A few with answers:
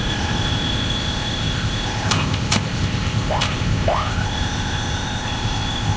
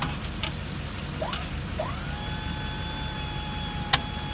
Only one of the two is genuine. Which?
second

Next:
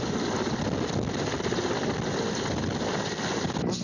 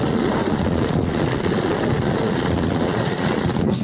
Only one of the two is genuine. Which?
first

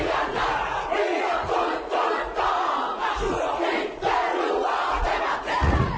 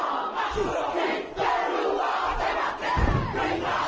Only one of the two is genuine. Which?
second